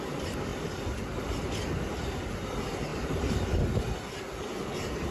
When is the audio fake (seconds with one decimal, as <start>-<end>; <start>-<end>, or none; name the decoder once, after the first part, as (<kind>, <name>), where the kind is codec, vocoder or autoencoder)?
2.9-3.6 (vocoder, BigVGAN v2)